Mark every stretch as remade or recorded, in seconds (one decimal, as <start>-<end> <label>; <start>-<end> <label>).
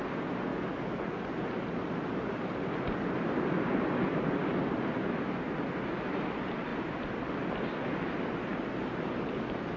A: 0.0-9.8 recorded